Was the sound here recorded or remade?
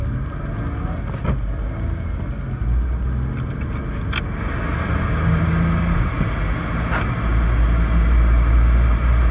recorded